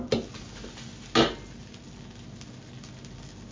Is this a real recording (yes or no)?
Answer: yes